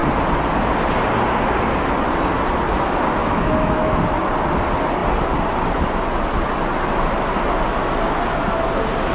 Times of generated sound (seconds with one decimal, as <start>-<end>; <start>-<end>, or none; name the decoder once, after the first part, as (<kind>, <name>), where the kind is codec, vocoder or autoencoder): 3.2-3.9 (autoencoder, DAC-VAE)

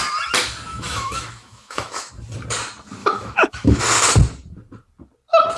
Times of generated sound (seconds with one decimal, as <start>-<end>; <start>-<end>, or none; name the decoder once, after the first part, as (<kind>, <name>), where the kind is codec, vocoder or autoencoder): 0.7-2.1 (autoencoder, DAC-VAE); 3.0-3.8